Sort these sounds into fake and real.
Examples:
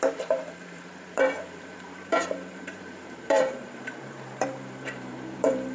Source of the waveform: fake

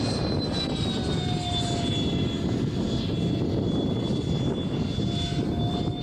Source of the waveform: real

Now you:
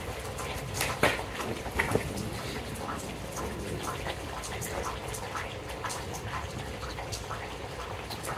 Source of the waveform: real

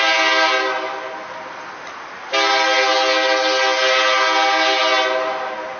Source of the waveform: real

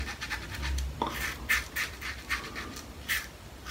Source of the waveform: fake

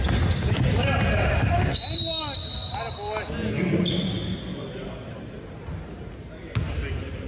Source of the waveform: real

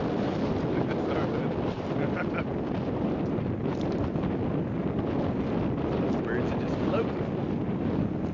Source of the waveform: real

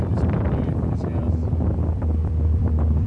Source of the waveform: fake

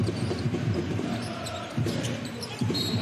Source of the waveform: fake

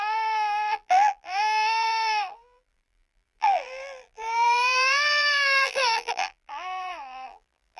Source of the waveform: fake